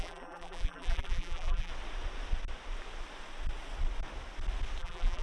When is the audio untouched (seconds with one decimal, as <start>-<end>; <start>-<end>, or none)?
1.7-4.8